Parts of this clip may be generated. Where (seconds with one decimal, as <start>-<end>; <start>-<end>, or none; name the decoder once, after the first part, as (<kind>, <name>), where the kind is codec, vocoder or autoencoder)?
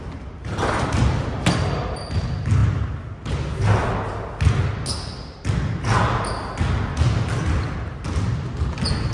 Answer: none